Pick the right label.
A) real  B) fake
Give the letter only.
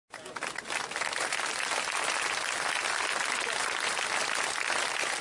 A